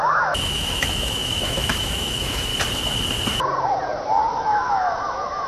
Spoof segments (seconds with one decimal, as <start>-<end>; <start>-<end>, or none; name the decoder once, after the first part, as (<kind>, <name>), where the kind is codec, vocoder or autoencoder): 0.0-2.5 (autoencoder, DAC-VAE); 4.3-5.5